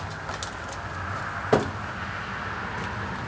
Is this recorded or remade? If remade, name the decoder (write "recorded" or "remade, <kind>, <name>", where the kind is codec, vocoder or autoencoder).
recorded